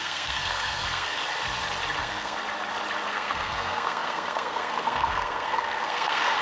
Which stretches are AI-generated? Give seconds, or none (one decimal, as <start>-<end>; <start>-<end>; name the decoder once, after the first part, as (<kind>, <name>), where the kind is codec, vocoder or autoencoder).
0.0-1.2 (codec, SNAC); 2.0-2.4; 3.1-6.4